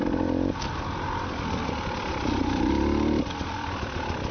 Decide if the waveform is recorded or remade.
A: remade